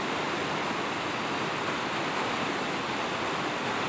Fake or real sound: real